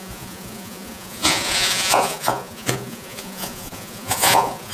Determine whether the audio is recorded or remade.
remade